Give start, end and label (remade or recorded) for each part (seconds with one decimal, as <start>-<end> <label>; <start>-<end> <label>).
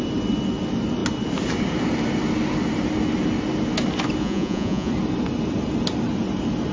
0.0-4.2 recorded; 4.2-4.9 remade; 4.9-6.7 recorded